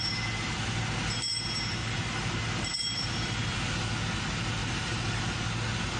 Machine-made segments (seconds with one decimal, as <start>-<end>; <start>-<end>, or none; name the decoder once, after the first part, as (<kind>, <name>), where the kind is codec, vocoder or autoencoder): 1.8-3.5 (vocoder, BigVGAN v2); 4.6-5.2